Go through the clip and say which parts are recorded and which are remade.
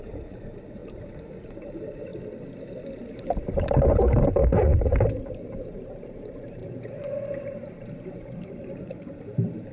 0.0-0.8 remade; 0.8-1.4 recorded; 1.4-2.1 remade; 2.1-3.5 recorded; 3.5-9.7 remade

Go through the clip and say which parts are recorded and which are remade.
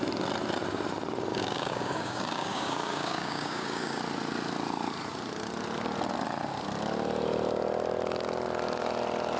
0.0-1.3 recorded; 1.3-4.0 remade; 4.0-9.4 recorded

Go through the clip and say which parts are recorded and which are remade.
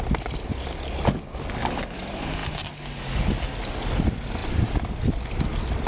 0.0-5.9 recorded